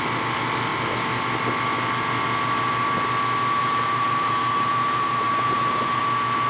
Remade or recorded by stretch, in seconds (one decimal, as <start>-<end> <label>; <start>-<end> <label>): 0.0-3.6 recorded; 3.6-6.0 remade; 6.0-6.5 recorded

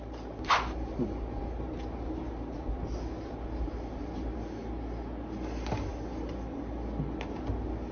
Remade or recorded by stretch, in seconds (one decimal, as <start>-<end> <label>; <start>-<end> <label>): 0.0-5.9 recorded; 5.9-6.6 remade; 6.6-7.9 recorded

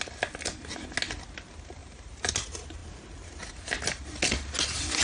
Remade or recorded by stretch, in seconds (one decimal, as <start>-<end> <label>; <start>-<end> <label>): 0.0-1.8 recorded; 1.8-2.3 remade; 2.3-5.0 recorded

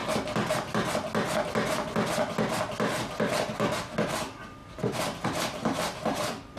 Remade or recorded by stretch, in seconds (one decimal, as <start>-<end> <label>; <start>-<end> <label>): 0.0-0.7 remade; 0.7-4.6 recorded; 4.6-6.6 remade

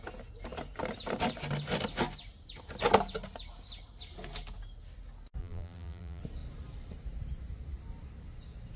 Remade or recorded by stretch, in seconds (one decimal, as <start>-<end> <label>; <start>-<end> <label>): 0.0-5.4 recorded; 5.4-6.2 remade; 6.2-8.8 recorded

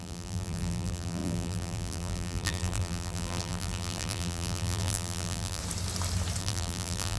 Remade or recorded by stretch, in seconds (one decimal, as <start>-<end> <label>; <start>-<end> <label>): 0.0-5.6 remade; 5.6-6.4 recorded; 6.4-7.2 remade

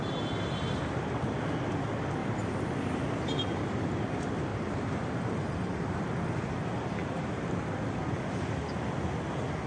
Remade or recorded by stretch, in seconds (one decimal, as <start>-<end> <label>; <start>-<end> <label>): 0.0-2.2 recorded; 2.2-3.6 remade; 3.6-4.5 recorded; 4.5-6.1 remade; 6.1-7.0 recorded; 7.0-7.8 remade; 7.8-9.7 recorded